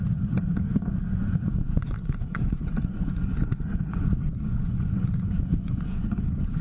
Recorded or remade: remade